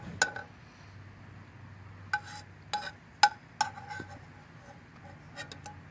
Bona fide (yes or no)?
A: yes